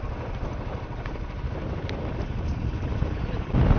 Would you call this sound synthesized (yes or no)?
no